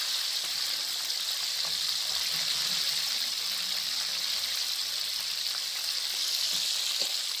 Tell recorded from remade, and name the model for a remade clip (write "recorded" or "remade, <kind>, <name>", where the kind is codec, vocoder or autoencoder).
recorded